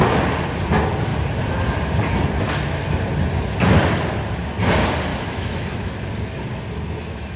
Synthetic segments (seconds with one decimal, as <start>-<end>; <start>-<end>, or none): 5.1-5.9